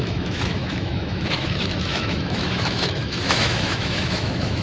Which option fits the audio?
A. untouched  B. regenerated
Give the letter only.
B